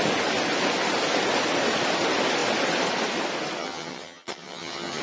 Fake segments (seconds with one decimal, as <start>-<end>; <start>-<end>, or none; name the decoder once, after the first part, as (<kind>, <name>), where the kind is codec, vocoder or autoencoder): 3.6-5.0 (vocoder, HiFi-GAN)